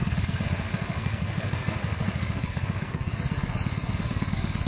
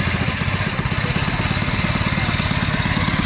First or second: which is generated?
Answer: first